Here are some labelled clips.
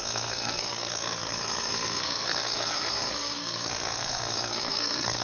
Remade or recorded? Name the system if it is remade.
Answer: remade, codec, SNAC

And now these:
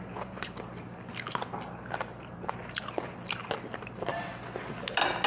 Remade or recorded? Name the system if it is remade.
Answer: recorded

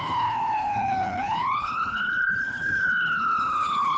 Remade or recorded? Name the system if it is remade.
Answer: remade, codec, HILCodec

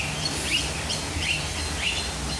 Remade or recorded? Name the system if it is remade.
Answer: recorded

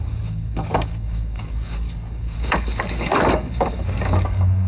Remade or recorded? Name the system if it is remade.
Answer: remade, codec, DAC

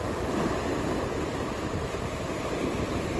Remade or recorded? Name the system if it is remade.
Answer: remade, vocoder, BigVGAN v2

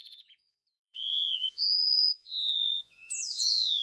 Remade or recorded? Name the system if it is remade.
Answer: remade, vocoder, Vocos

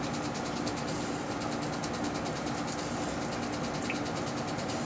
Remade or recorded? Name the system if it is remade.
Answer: recorded